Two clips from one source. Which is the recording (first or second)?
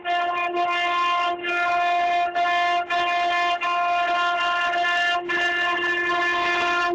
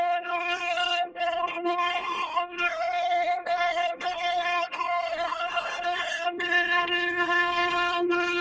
first